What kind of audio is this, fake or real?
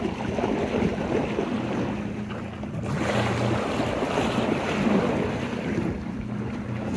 real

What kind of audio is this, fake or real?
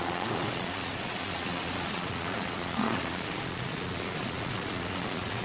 fake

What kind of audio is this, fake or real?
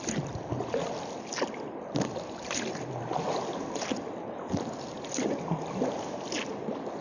real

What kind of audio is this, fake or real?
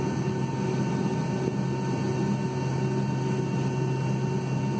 real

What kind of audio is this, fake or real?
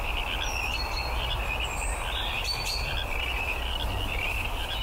real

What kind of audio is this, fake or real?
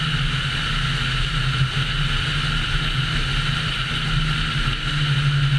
real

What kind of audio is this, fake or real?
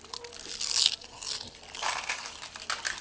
real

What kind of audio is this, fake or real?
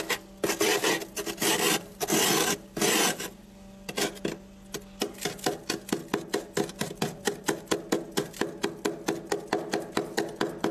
real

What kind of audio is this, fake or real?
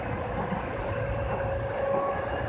real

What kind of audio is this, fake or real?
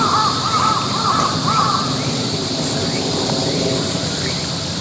real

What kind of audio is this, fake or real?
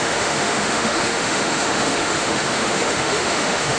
fake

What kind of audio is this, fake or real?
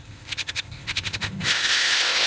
fake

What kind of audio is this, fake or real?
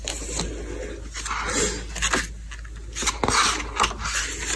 real